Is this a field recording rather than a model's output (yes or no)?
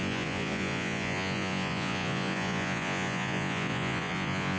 no